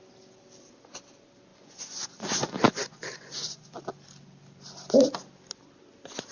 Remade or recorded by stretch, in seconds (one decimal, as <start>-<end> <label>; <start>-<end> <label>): 0.0-1.5 recorded; 1.5-3.8 remade; 3.8-6.3 recorded